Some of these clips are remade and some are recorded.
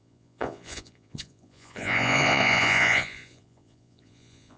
remade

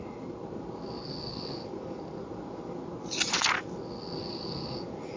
recorded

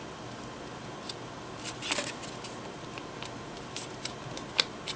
recorded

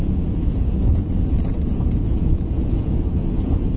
remade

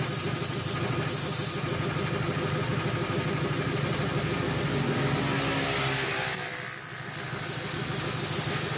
recorded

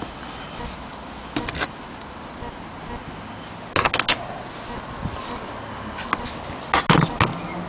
recorded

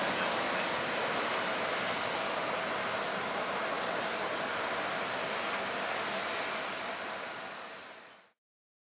recorded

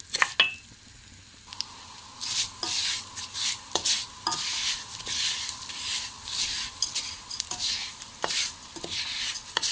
recorded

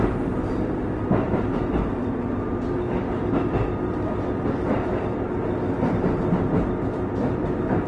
recorded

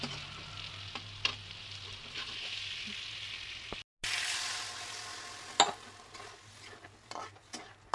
recorded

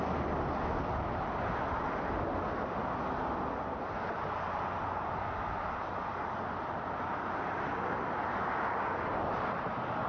recorded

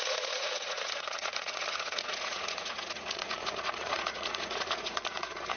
remade